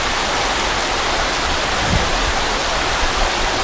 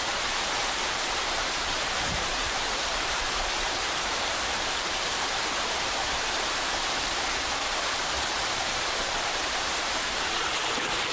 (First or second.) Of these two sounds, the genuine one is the first